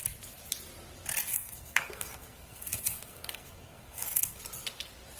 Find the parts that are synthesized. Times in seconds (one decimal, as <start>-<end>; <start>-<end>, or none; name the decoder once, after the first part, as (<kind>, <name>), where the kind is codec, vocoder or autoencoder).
1.3-4.4 (codec, SNAC)